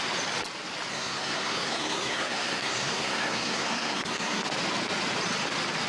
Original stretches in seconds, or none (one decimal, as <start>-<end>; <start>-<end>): 0.0-0.9; 4.4-5.9